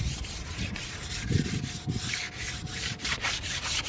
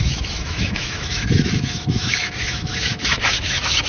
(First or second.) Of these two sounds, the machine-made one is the second